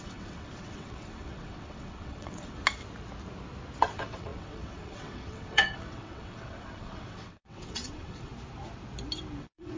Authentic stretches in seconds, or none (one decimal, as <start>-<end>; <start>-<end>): 2.6-3.8; 8.3-9.4